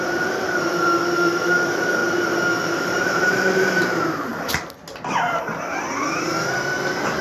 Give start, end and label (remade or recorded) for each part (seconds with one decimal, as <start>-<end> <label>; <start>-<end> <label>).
0.0-2.0 remade; 2.0-2.7 recorded; 2.7-4.3 remade; 4.3-7.2 recorded